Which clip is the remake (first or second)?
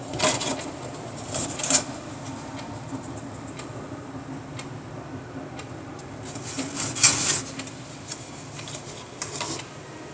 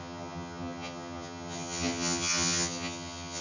second